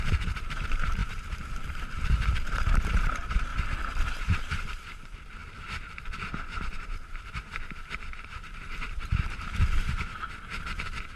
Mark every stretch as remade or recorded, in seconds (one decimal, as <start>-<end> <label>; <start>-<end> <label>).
0.0-3.5 remade; 3.5-4.1 recorded; 4.1-11.2 remade